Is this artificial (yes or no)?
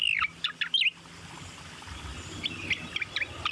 no